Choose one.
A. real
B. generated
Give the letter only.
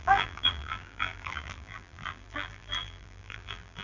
B